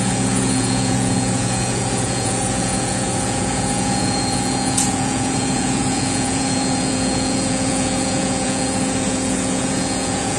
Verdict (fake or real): fake